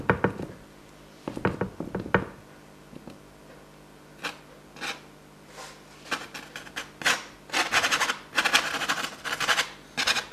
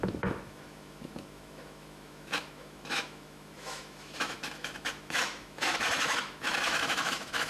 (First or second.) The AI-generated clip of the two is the second